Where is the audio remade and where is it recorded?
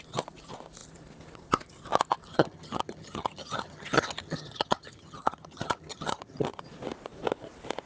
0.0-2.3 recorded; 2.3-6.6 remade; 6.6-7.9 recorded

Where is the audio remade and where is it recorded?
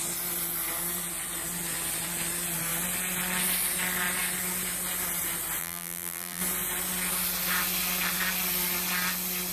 0.0-5.6 recorded; 5.6-6.4 remade; 6.4-9.5 recorded